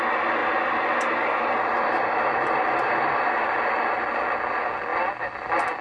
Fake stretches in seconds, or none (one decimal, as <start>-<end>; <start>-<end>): none